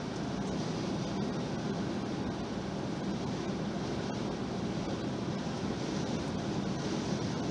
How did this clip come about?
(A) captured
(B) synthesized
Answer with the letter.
A